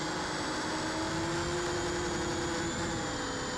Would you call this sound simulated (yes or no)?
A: no